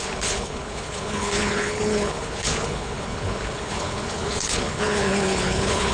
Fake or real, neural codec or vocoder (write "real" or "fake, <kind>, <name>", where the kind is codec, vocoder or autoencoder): fake, codec, HILCodec